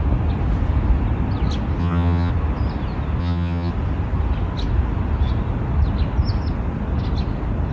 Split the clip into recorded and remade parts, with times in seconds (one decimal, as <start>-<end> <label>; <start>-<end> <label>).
0.0-1.8 recorded; 1.8-2.3 remade; 2.3-3.2 recorded; 3.2-3.7 remade; 3.7-7.7 recorded